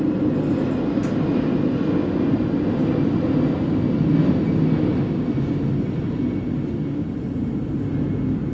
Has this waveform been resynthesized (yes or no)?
no